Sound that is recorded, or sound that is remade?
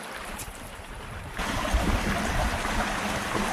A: remade